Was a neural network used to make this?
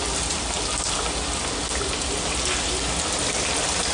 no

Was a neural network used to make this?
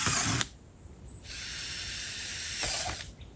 no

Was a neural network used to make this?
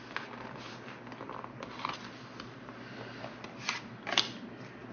no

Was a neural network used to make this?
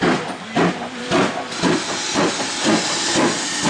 no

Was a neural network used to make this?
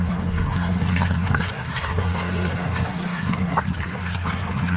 yes